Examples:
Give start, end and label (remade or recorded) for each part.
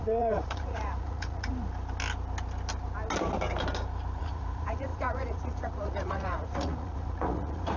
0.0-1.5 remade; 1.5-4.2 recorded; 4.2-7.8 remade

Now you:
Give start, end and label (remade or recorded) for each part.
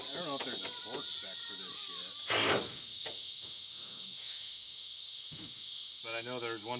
0.0-2.7 recorded; 2.7-6.0 remade; 6.0-6.8 recorded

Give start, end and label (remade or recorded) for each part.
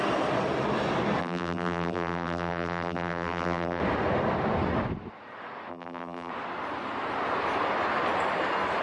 0.0-1.2 recorded; 1.2-3.8 remade; 3.8-5.7 recorded; 5.7-6.3 remade; 6.3-8.8 recorded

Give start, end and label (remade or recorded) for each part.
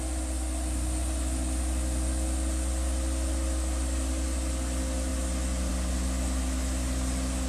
0.0-7.5 recorded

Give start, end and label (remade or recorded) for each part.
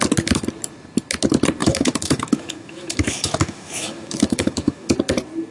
0.0-1.6 recorded; 1.6-4.9 remade; 4.9-5.5 recorded